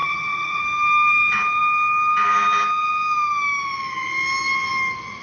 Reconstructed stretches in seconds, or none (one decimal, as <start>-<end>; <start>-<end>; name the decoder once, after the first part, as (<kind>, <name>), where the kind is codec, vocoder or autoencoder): 0.0-0.6 (vocoder, HiFi-GAN)